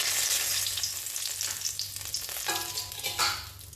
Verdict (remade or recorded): recorded